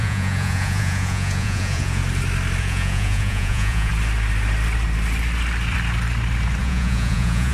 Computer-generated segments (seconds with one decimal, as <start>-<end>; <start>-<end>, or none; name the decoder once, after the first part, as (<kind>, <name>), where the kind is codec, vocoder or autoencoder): 0.0-2.0 (vocoder, Vocos); 2.6-3.9; 6.6-7.5